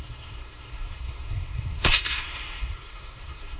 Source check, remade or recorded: remade